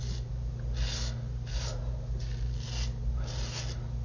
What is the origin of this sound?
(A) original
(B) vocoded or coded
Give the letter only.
A